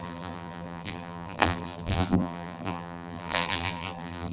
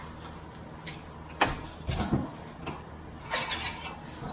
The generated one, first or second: first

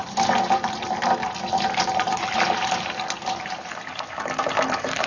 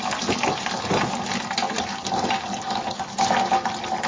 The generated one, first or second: first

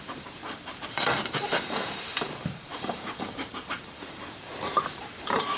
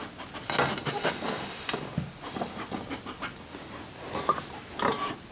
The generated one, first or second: first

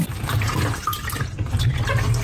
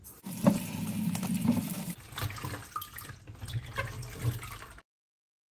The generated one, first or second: first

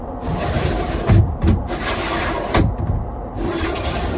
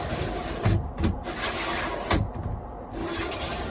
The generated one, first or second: first